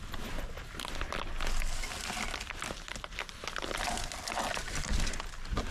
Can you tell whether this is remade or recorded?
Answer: recorded